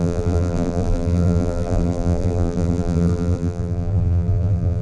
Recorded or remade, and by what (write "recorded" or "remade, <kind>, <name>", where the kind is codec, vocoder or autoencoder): remade, vocoder, BigVGAN v2